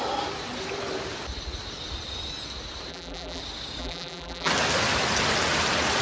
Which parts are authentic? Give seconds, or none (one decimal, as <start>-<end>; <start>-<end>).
0.0-2.9; 3.4-3.8; 4.5-6.0